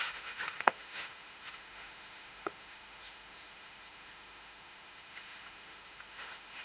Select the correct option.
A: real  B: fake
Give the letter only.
B